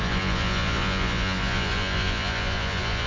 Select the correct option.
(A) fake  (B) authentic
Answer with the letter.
A